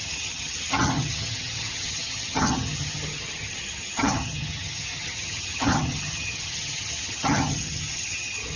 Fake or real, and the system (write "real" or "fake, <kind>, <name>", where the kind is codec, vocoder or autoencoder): fake, vocoder, HiFi-GAN